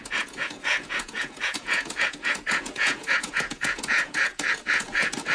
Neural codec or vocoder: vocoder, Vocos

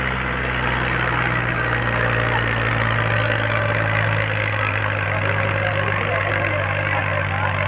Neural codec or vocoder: none